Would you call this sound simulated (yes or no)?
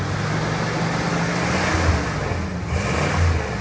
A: no